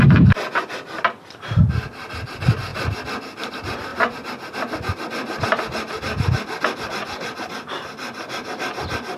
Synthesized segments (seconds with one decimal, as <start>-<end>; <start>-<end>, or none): none